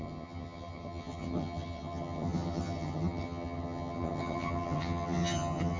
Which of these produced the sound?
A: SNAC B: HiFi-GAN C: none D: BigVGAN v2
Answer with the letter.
B